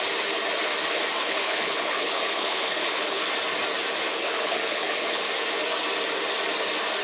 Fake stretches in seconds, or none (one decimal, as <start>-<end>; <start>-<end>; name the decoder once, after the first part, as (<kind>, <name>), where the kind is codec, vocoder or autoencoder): 1.2-3.2 (codec, HILCodec); 4.1-5.2